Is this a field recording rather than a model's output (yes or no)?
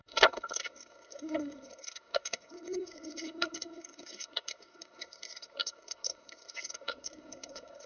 no